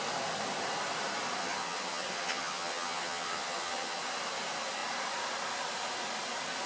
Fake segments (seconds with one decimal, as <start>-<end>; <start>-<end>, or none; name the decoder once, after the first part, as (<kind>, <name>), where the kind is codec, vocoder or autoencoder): 1.4-4.0 (vocoder, HiFi-GAN)

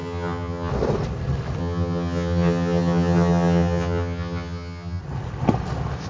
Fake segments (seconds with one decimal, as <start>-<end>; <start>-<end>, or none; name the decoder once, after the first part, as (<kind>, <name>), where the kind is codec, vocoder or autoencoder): 0.0-0.7 (vocoder, HiFi-GAN); 1.6-5.0

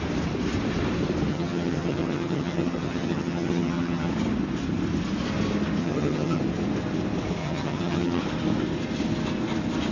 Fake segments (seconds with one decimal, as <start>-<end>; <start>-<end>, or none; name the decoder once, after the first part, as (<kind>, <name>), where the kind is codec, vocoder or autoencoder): 1.3-4.1 (vocoder, HiFi-GAN); 5.8-6.4; 7.4-8.2

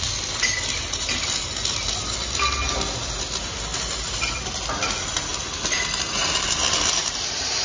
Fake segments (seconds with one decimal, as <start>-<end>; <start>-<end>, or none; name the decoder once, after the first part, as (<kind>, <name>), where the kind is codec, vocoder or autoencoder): none

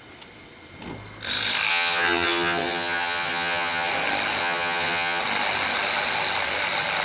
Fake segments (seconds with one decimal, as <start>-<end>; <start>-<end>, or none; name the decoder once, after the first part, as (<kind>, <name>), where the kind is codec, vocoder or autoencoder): 1.7-3.9 (vocoder, HiFi-GAN); 4.4-5.2

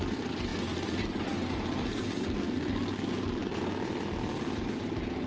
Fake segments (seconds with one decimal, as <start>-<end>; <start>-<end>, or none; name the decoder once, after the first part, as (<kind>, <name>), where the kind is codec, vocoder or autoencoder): none